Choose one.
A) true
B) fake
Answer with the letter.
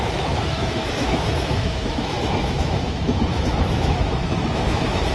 B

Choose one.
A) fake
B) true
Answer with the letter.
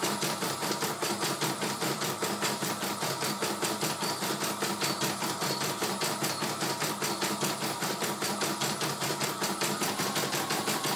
A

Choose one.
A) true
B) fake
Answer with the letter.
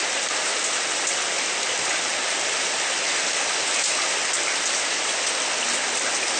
A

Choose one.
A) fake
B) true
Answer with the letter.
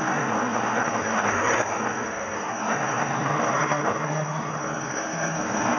A